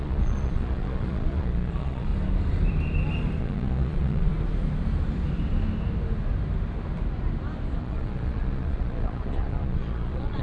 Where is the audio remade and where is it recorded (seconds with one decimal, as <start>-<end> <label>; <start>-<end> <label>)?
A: 0.0-2.1 remade; 2.1-3.4 recorded; 3.4-4.3 remade; 4.3-7.8 recorded; 7.8-10.4 remade